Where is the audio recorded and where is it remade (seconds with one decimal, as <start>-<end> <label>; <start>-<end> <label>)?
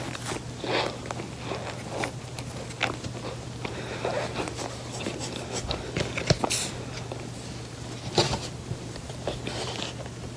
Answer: 0.0-10.4 recorded